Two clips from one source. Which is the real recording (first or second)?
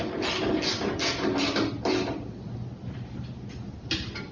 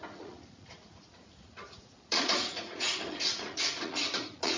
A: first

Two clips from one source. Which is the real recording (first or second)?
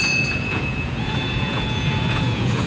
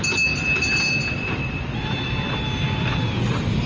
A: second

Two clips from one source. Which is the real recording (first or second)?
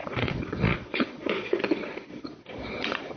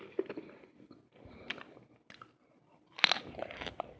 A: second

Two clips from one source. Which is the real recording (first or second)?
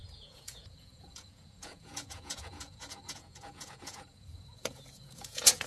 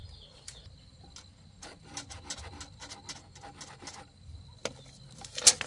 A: second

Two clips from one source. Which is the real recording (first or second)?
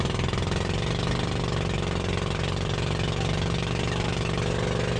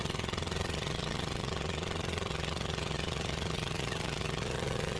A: first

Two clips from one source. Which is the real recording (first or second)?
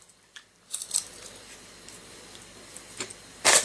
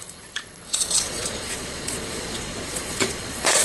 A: first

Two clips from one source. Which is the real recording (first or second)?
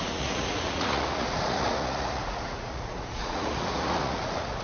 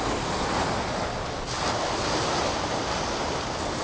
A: second